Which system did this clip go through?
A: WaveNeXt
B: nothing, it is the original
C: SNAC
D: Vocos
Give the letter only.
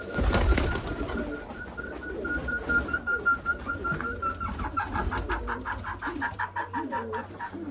B